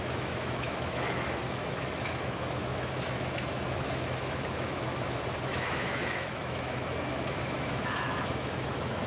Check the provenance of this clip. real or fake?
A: fake